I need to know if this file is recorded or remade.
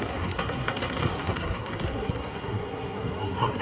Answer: remade